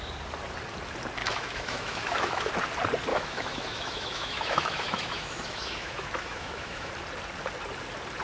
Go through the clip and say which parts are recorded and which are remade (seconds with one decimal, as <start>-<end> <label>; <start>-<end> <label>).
0.0-1.2 recorded; 1.2-2.5 remade; 2.5-3.1 recorded; 3.1-6.9 remade; 6.9-8.2 recorded